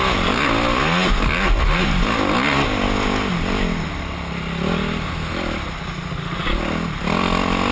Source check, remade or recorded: recorded